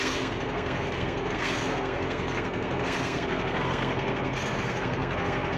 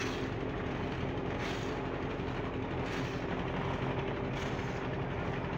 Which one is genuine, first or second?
second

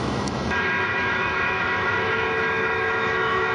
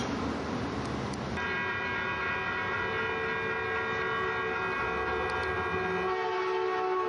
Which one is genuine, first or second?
second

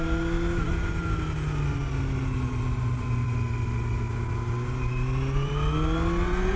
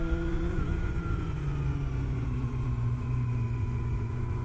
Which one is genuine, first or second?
first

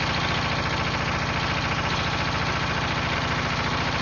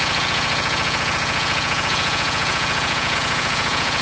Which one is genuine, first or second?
first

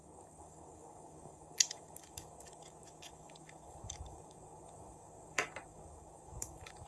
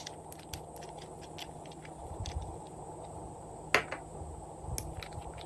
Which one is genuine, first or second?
second